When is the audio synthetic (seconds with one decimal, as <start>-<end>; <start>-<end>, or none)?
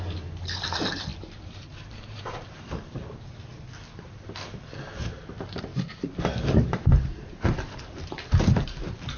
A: 0.0-3.5; 5.2-5.7; 7.3-9.2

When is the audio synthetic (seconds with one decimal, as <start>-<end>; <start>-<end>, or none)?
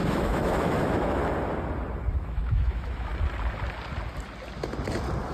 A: 0.0-1.2; 2.1-3.1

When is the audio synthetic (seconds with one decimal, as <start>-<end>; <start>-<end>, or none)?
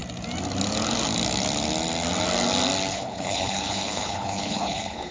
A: 2.9-5.1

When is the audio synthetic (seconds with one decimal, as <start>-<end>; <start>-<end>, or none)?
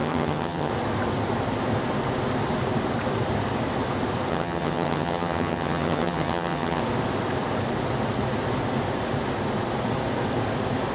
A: 0.0-0.7; 4.3-6.8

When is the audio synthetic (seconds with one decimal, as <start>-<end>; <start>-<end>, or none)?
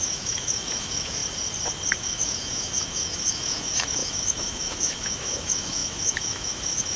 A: 0.0-1.2; 2.0-7.0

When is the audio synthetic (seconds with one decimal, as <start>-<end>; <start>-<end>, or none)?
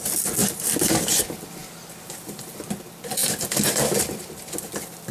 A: 0.4-0.9